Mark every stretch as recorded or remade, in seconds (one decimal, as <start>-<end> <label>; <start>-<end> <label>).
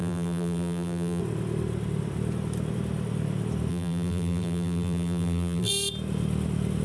0.0-1.2 remade; 1.2-3.7 recorded; 3.7-5.7 remade; 5.7-6.8 recorded